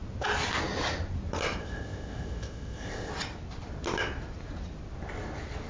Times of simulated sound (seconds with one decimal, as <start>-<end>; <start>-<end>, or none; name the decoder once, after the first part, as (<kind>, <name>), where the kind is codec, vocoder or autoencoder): 1.6-3.1 (codec, ZipCodec)

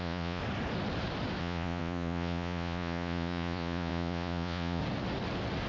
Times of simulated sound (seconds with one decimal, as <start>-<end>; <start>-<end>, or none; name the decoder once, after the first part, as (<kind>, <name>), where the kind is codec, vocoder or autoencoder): 0.0-0.4 (vocoder, Vocos); 1.4-4.8

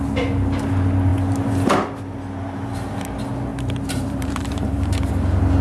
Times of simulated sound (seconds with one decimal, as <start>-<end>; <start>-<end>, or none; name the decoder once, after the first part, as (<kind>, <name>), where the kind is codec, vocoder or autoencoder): 3.5-5.1 (vocoder, BigVGAN v2)